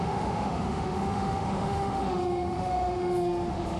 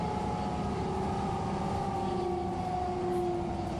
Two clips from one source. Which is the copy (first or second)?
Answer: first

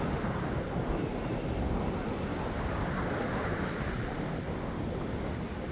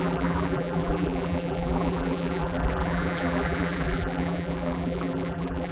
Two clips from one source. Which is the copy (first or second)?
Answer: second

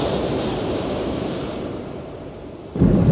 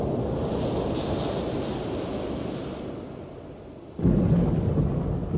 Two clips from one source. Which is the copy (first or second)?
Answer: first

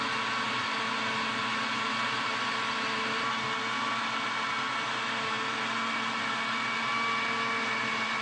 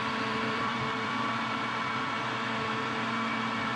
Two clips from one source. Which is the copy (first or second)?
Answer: second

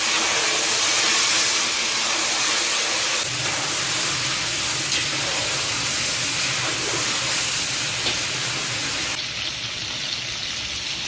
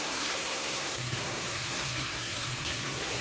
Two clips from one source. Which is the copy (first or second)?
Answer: second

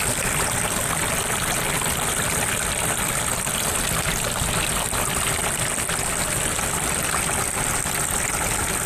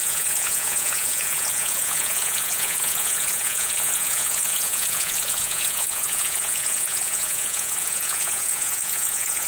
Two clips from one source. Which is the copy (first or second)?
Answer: second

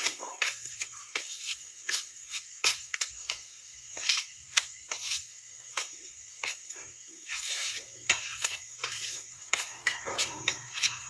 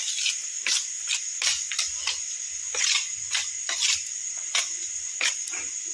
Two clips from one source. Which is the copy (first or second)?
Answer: first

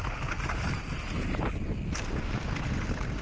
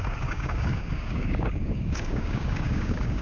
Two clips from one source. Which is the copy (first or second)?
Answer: second